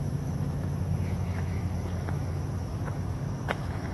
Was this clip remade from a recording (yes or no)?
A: yes